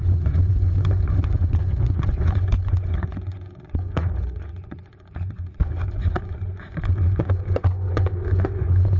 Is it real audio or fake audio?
fake